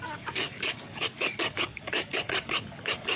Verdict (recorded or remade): remade